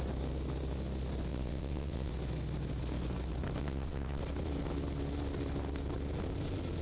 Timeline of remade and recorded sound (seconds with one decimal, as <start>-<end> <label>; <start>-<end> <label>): 0.0-1.3 recorded; 1.3-2.1 remade; 2.1-3.6 recorded; 3.6-4.2 remade; 4.2-6.8 recorded